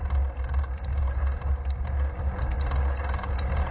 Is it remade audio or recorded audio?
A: recorded